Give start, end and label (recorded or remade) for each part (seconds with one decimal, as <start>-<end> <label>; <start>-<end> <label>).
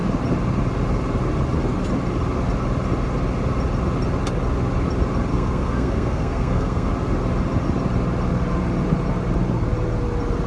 0.0-5.3 recorded; 5.3-6.9 remade; 6.9-10.5 recorded